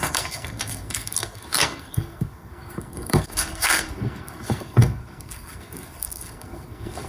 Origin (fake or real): fake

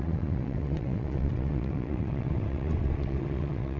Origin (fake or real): fake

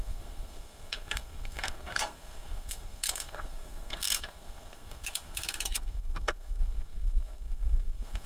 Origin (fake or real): fake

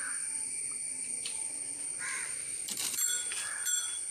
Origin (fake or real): fake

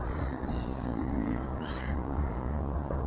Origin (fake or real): fake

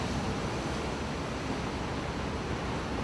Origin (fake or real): real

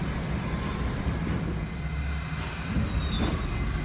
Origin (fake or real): real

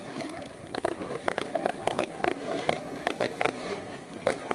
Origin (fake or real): fake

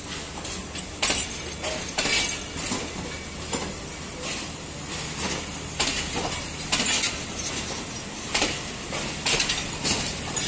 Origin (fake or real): real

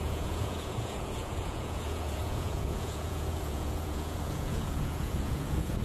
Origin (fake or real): fake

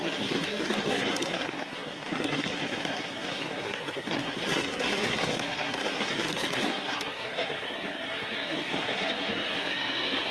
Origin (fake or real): fake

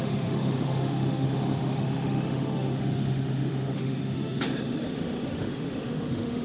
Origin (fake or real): fake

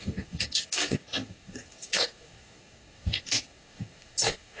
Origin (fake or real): fake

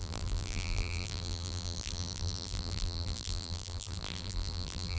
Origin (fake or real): fake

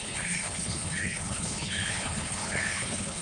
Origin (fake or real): fake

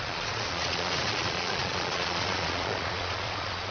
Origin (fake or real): fake